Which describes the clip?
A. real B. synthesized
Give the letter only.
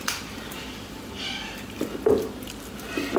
B